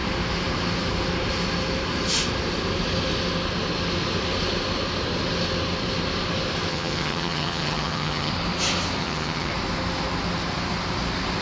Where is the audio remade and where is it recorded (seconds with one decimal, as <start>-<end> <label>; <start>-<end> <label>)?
0.0-6.7 recorded; 6.7-8.3 remade; 8.3-9.0 recorded; 9.0-9.5 remade; 9.5-11.4 recorded